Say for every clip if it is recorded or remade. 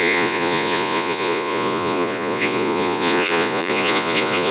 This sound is remade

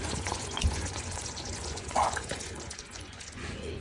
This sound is remade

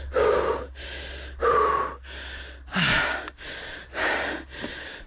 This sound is recorded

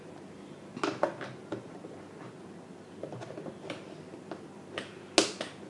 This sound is recorded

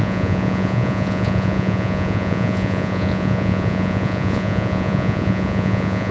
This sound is remade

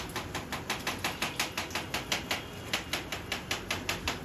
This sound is recorded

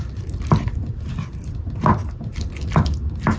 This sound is recorded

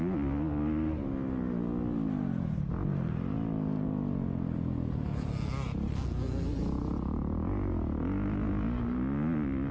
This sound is recorded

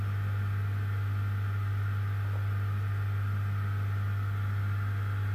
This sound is recorded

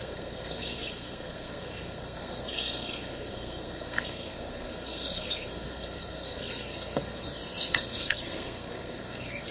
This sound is remade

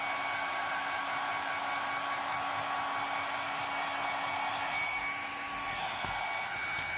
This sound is recorded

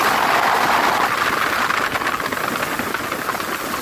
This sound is recorded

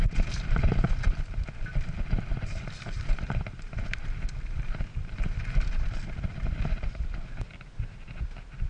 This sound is recorded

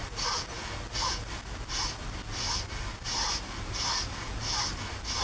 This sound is recorded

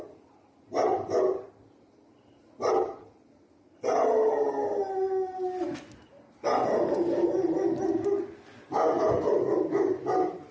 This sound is recorded